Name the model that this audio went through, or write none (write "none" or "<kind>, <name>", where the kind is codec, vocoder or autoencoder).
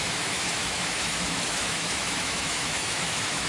autoencoder, DAC-VAE